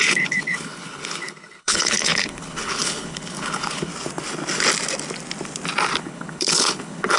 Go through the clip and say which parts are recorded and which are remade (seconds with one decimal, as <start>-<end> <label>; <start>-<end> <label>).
0.0-3.9 remade; 3.9-6.0 recorded; 6.0-7.2 remade